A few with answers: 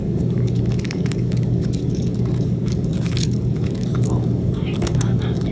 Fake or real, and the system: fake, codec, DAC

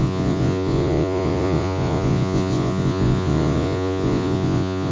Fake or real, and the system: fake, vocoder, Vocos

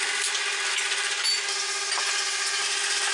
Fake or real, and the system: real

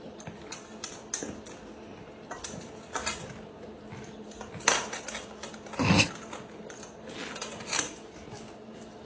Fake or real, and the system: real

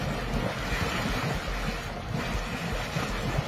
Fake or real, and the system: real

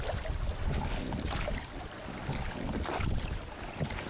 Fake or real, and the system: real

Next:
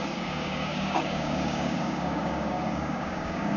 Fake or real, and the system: fake, codec, DAC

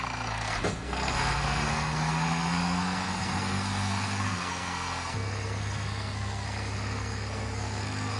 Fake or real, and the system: fake, codec, SNAC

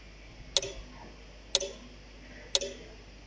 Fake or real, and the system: real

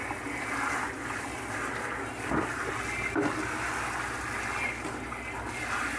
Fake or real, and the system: real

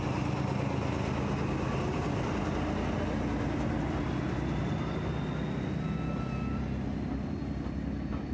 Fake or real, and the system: real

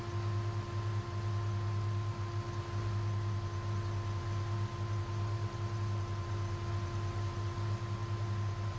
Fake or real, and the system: real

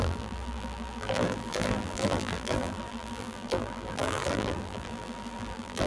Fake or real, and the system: fake, vocoder, BigVGAN v2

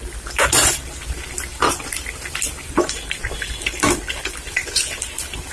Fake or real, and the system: real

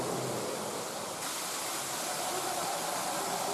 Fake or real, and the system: real